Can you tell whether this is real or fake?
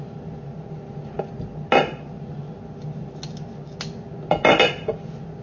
real